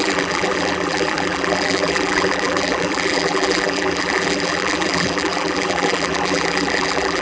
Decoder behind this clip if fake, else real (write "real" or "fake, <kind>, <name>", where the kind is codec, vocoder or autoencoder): fake, vocoder, BigVGAN v2